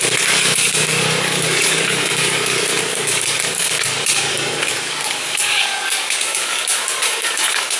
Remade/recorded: remade